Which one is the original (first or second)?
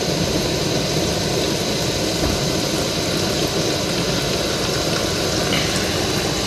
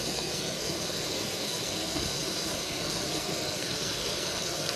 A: first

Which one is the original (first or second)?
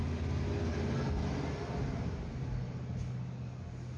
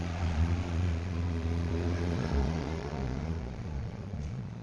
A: first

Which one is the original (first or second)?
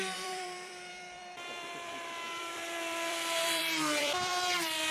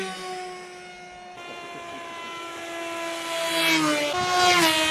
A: second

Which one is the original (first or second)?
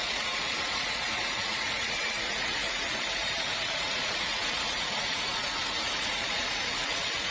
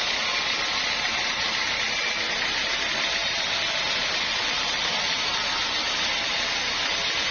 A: second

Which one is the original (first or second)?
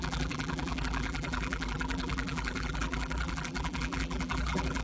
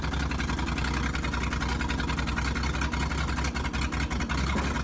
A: second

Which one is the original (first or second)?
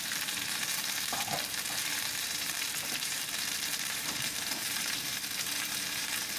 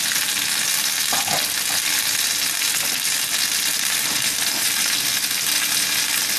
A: second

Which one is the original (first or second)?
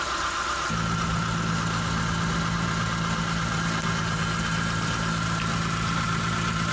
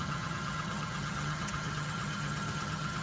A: first